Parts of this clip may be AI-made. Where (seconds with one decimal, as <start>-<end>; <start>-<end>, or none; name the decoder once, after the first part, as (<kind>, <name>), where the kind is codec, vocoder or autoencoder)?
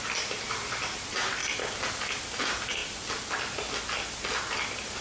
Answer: none